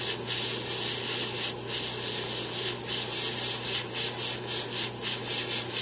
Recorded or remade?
recorded